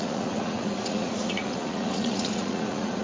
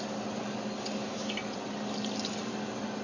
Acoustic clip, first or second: second